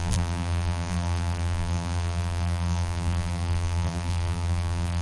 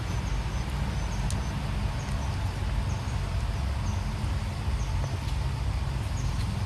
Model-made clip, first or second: first